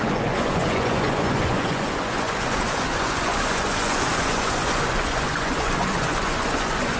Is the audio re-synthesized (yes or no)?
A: yes